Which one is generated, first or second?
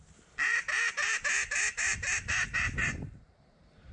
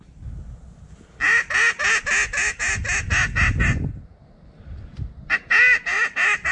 first